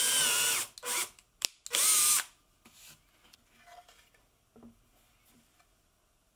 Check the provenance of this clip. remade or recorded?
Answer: recorded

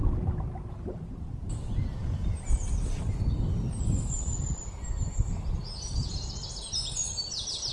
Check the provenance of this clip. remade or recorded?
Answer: recorded